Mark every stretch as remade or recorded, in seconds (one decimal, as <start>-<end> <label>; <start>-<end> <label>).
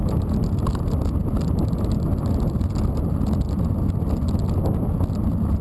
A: 0.0-5.6 recorded